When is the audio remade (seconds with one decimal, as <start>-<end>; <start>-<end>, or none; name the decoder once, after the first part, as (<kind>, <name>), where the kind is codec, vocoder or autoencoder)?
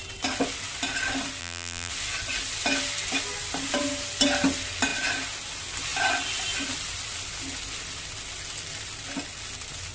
1.4-1.9 (vocoder, BigVGAN v2)